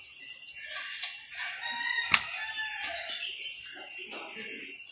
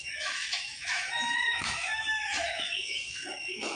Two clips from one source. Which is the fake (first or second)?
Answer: second